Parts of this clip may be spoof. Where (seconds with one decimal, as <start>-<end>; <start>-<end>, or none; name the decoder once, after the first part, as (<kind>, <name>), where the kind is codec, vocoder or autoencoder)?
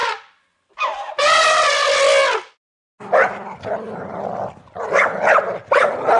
none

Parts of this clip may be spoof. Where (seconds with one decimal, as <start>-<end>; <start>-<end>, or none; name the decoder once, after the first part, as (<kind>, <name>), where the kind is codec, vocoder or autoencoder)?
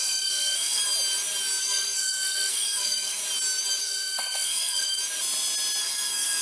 0.0-0.8 (codec, SNAC); 1.6-3.2; 3.8-5.0; 5.8-6.4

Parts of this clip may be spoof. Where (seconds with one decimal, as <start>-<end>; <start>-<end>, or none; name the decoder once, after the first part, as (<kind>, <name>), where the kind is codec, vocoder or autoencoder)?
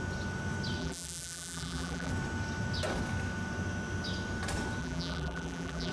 0.8-2.1 (vocoder, BigVGAN v2); 4.8-5.9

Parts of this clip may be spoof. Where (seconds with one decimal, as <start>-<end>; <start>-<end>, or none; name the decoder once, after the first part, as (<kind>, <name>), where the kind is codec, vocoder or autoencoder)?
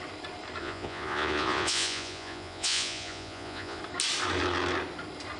0.6-3.8 (vocoder, Vocos)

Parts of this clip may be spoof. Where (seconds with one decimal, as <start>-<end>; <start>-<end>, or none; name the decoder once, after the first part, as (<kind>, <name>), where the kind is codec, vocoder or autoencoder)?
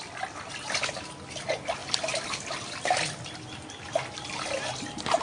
none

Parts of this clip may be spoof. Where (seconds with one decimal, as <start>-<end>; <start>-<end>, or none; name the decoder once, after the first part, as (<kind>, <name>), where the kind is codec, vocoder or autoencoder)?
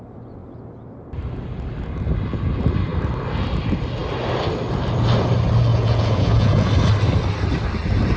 5.7-6.7 (vocoder, Vocos)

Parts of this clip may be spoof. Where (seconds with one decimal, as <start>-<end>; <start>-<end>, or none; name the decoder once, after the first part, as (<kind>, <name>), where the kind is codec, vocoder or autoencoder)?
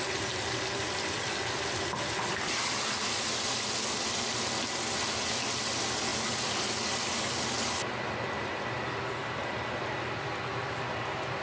none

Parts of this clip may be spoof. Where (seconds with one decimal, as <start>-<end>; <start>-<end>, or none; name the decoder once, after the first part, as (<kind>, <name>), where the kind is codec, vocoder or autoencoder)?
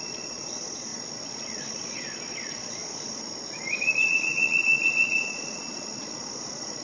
0.0-6.8 (vocoder, Vocos)